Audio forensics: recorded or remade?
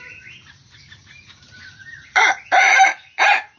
remade